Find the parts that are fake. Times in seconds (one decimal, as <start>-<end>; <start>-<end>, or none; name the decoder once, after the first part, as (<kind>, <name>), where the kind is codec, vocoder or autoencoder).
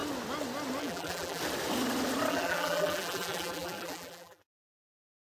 0.8-1.4 (vocoder, BigVGAN v2); 2.3-5.4